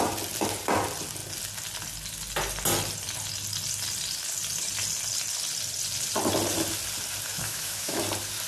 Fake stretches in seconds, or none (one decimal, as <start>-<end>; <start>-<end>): 7.3-8.0